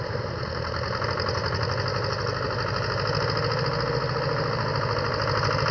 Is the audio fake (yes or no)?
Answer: no